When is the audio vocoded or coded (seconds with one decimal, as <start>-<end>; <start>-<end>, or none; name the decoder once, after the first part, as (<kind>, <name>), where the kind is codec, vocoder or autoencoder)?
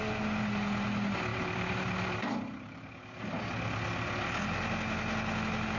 1.3-2.9 (vocoder, BigVGAN v2)